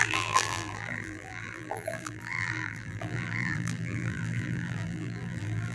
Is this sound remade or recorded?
remade